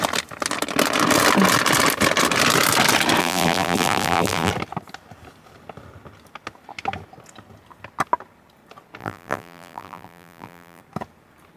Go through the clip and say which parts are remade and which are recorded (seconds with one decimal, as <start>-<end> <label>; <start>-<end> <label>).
0.0-3.2 recorded; 3.2-4.5 remade; 4.5-9.0 recorded; 9.0-10.8 remade; 10.8-11.6 recorded

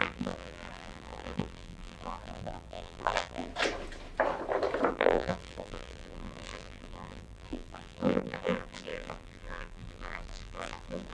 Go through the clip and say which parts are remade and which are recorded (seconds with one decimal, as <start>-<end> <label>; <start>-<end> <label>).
0.0-3.5 remade; 3.5-4.9 recorded; 4.9-11.1 remade

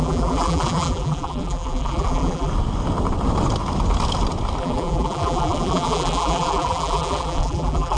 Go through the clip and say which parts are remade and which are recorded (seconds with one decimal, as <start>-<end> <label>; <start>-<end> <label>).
0.0-2.5 remade; 2.5-4.6 recorded; 4.6-8.0 remade